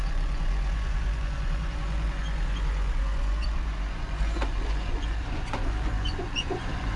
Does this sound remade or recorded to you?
remade